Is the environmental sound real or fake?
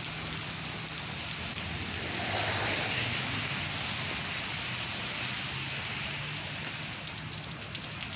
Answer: real